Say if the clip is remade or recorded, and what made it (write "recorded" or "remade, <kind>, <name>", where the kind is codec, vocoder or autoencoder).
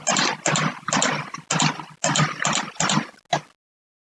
recorded